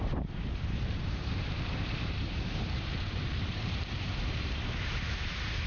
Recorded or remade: remade